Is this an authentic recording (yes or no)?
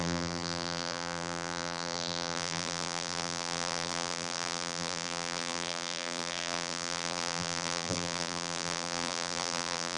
no